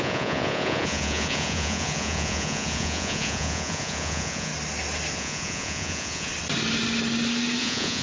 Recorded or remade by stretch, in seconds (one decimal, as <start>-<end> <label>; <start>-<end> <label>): 0.0-4.5 remade; 4.5-5.1 recorded; 5.1-6.3 remade; 6.3-7.6 recorded; 7.6-8.0 remade

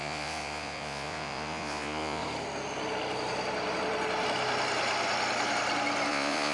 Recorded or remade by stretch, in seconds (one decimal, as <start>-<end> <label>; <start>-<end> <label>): 0.0-2.2 remade; 2.2-6.1 recorded; 6.1-6.5 remade

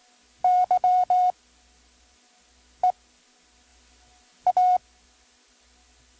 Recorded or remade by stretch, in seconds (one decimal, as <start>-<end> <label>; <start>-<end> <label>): 0.0-6.2 recorded

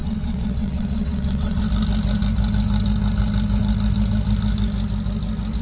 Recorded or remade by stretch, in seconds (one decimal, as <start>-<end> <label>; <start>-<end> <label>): 0.0-1.6 remade; 1.6-5.6 recorded

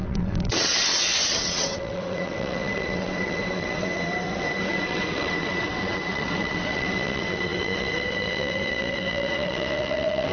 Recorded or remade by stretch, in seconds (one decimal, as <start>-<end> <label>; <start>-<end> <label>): 0.0-10.3 remade

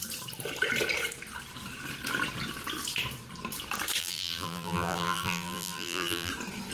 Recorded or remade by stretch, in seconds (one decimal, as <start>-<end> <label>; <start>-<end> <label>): 0.0-4.0 recorded; 4.0-6.3 remade; 6.3-6.7 recorded

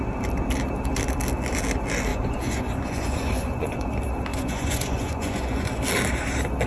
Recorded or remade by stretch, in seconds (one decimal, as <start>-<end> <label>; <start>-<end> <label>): 0.0-2.1 recorded; 2.1-3.9 remade; 3.9-4.3 recorded; 4.3-5.8 remade; 5.8-6.7 recorded